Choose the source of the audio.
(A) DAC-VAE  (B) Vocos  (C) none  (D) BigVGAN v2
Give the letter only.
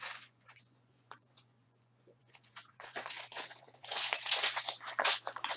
B